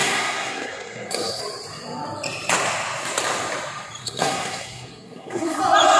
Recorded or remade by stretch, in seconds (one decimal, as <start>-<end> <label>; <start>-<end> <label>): 0.0-1.4 remade; 1.4-4.0 recorded; 4.0-5.6 remade; 5.6-6.0 recorded